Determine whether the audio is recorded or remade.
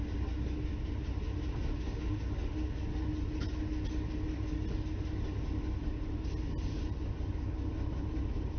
recorded